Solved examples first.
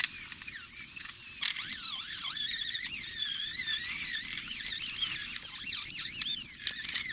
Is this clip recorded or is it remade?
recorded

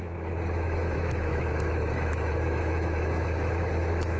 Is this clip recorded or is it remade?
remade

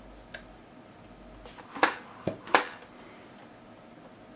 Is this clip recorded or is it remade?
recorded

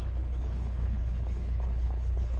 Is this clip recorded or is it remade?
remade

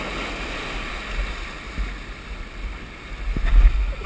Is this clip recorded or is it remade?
recorded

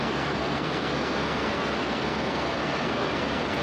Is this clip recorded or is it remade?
remade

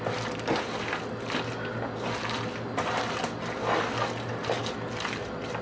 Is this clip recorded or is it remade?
recorded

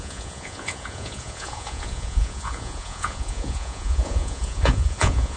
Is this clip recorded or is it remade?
remade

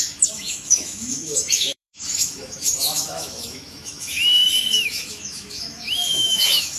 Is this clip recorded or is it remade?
remade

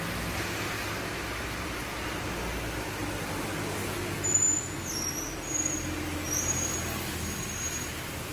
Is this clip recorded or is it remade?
recorded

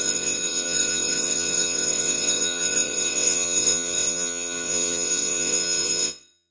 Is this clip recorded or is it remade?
remade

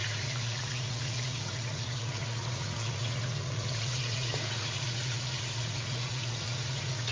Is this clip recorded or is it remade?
remade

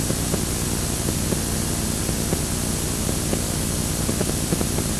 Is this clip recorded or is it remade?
recorded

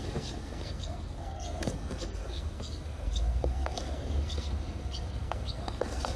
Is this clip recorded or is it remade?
remade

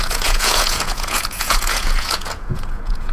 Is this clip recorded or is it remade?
remade